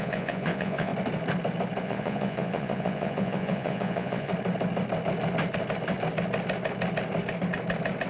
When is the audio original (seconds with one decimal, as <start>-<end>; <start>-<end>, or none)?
0.9-1.8; 4.3-8.1